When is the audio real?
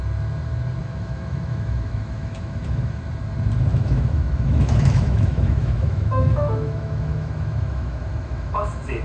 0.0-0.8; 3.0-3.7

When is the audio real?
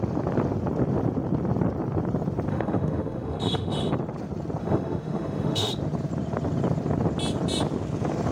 0.0-2.5; 3.9-4.6; 5.7-8.3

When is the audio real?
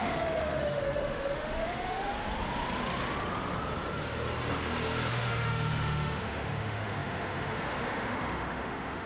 2.1-5.1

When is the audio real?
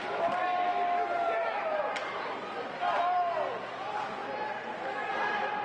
0.0-5.6